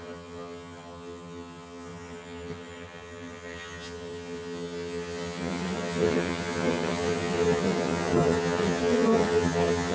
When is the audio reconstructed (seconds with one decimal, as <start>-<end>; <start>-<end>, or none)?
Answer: 0.0-9.9